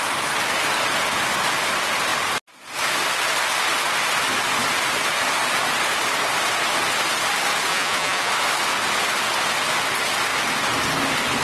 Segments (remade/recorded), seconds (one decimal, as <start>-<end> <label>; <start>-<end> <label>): 0.0-7.7 recorded; 7.7-8.3 remade; 8.3-11.4 recorded